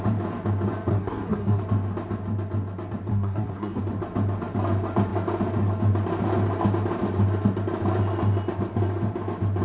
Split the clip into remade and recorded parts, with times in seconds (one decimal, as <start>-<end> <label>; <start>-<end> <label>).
0.0-0.9 recorded; 0.9-1.6 remade; 1.6-3.1 recorded; 3.1-3.8 remade; 3.8-9.6 recorded